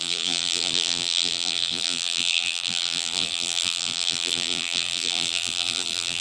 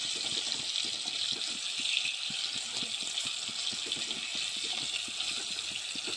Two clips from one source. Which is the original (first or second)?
second